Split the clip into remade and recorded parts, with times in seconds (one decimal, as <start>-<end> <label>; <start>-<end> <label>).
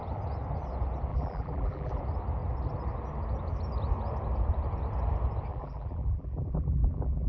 0.0-1.1 recorded; 1.1-2.0 remade; 2.0-5.5 recorded; 5.5-7.3 remade